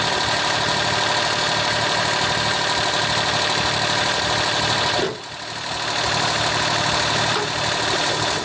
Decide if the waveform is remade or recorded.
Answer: recorded